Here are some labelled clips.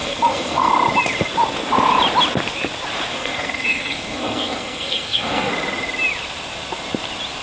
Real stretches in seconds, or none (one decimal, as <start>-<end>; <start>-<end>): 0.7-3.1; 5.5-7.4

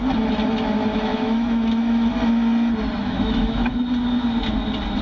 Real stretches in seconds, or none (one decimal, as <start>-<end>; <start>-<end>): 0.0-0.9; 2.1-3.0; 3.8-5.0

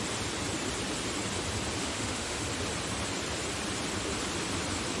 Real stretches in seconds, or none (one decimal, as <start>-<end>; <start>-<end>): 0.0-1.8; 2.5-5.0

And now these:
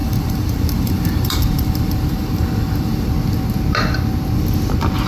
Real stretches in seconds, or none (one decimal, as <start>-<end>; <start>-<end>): 3.1-5.1